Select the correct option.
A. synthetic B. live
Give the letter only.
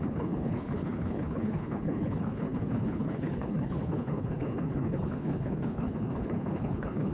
A